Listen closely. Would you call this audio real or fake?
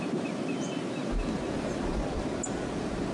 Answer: real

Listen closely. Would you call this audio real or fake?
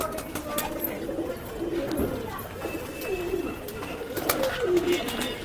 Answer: real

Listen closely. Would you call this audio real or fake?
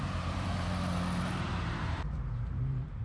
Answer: fake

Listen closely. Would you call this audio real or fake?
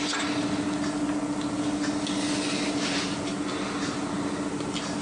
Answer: real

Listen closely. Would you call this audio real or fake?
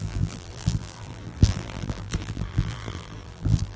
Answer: fake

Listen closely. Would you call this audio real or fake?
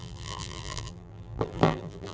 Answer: fake